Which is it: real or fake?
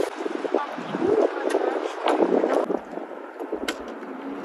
real